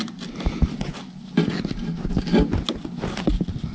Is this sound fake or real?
real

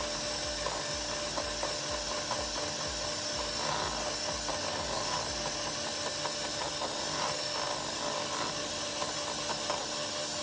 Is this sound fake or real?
real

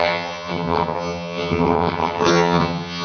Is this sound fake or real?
fake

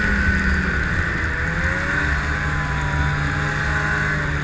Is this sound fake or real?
real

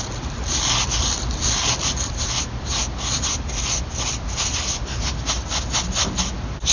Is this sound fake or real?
real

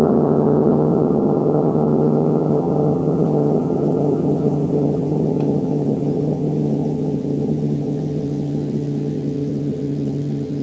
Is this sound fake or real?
fake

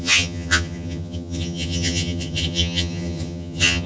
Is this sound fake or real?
fake